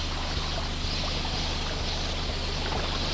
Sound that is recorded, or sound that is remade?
recorded